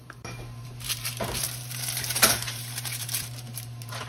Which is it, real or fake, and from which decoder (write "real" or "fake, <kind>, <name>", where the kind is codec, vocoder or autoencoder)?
fake, vocoder, BigVGAN v2